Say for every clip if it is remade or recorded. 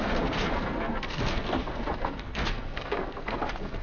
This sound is remade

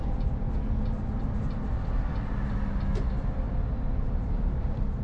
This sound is recorded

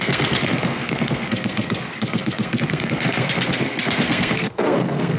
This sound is remade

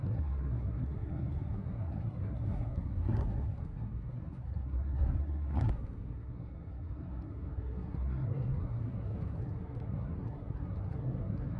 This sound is remade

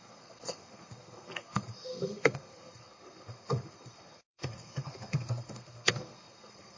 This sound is remade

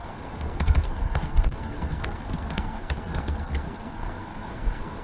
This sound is remade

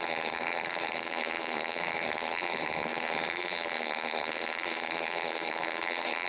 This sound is remade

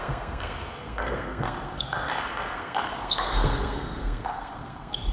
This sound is remade